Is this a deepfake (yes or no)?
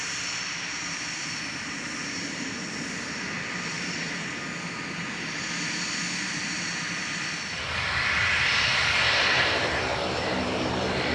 no